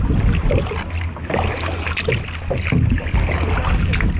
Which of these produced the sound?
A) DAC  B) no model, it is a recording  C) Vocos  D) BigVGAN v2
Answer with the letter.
B